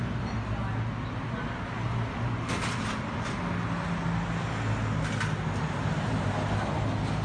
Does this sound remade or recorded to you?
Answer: recorded